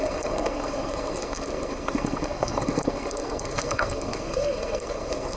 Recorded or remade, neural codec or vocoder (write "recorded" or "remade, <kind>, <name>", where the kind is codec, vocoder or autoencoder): remade, codec, SNAC